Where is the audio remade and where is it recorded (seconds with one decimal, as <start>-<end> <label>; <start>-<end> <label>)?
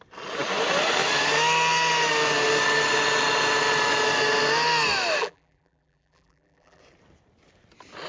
0.0-5.2 recorded; 5.2-6.8 remade; 6.8-8.1 recorded